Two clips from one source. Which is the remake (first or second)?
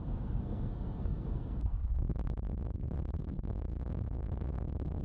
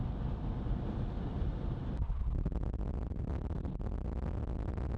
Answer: first